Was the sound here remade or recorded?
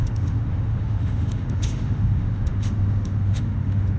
remade